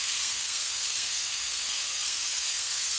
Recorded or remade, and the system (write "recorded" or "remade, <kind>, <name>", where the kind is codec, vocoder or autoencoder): remade, codec, SNAC